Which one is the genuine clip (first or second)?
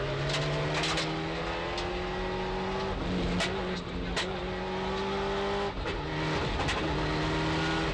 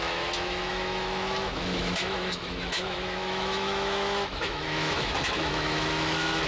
first